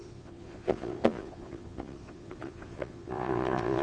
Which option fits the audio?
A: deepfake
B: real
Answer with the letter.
A